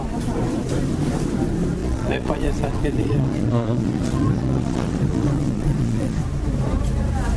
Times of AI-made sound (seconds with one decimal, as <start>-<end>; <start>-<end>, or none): 1.8-6.2